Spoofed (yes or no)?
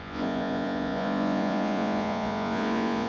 yes